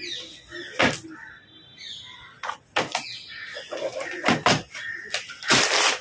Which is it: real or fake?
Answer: real